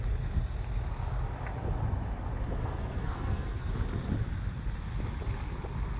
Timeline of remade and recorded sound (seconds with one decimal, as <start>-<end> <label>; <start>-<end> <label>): 0.0-2.6 recorded; 2.6-3.7 remade; 3.7-6.0 recorded